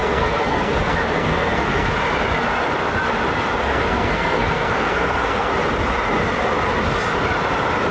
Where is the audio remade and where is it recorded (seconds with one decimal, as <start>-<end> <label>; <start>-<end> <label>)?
0.0-1.9 remade; 1.9-3.7 recorded; 3.7-5.5 remade; 5.5-7.9 recorded